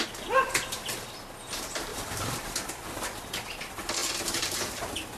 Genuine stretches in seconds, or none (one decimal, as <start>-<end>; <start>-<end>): 0.0-1.9; 2.7-4.0; 4.8-5.2